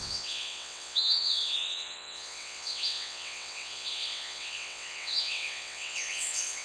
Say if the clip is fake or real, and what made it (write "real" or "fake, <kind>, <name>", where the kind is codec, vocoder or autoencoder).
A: fake, vocoder, WaveNeXt